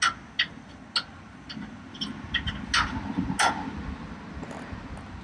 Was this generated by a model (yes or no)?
no